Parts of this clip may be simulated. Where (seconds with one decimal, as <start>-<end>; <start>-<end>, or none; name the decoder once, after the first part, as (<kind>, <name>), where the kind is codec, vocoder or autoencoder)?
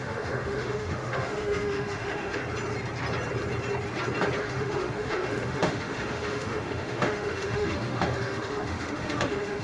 0.0-2.4 (autoencoder, DAC-VAE); 4.4-9.6